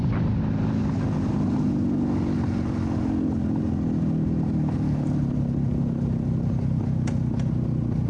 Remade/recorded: recorded